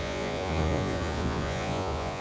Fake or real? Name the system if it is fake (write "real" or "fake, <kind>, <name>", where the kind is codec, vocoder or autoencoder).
fake, vocoder, Vocos